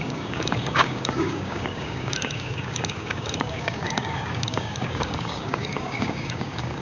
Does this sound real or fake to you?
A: fake